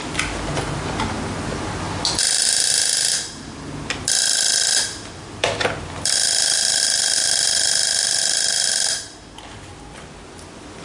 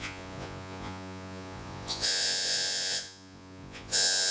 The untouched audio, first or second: first